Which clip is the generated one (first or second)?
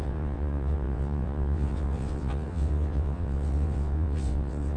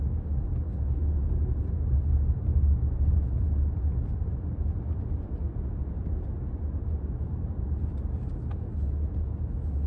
first